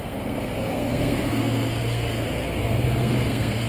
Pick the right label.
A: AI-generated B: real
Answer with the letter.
A